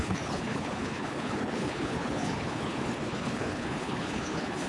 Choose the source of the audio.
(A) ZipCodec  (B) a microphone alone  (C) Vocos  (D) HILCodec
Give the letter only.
D